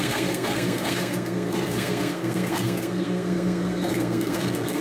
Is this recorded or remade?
remade